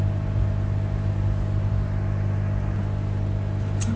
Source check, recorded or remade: recorded